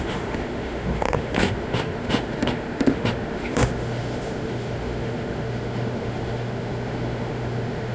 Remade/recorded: remade